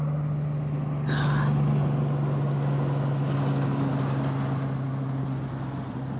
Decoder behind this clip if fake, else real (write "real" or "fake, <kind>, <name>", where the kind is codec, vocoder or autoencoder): real